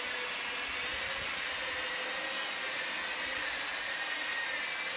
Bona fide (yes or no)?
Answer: yes